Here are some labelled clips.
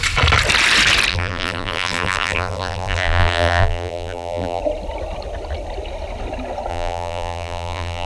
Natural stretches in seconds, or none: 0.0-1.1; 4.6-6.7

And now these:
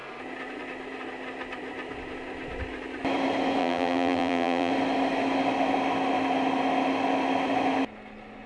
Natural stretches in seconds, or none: 0.0-3.6; 4.7-8.5

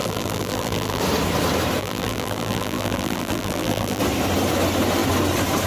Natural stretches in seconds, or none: 1.0-1.8; 4.0-5.7